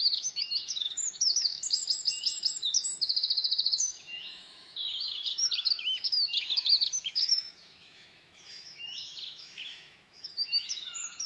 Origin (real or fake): fake